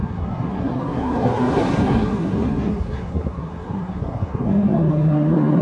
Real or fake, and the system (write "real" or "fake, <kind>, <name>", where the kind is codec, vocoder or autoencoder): fake, codec, SNAC